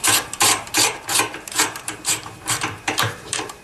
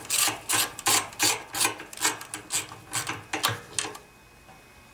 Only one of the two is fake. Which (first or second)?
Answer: first